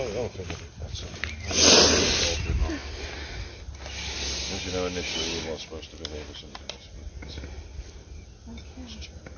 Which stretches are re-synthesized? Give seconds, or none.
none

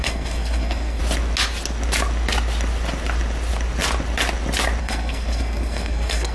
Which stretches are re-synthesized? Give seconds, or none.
0.0-1.0; 4.8-6.3

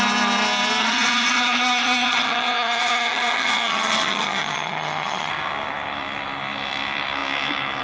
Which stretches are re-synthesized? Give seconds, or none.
0.8-5.3